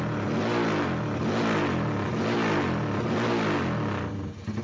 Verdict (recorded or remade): recorded